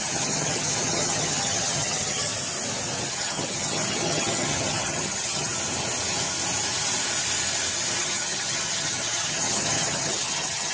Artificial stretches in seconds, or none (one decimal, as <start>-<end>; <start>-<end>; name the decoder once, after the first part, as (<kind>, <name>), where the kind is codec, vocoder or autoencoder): 0.0-2.3 (vocoder, HiFi-GAN); 3.1-5.5; 8.0-10.7